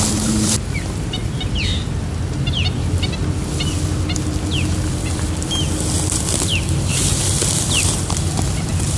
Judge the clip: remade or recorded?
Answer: remade